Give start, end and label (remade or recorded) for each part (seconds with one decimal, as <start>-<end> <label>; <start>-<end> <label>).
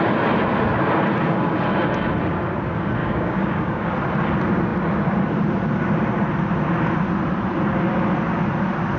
0.0-3.0 recorded; 3.0-3.9 remade; 3.9-9.0 recorded